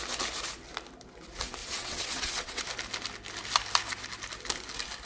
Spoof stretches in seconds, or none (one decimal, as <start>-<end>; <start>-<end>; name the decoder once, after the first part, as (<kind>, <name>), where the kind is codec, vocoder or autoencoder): 1.6-2.6 (vocoder, WaveNeXt)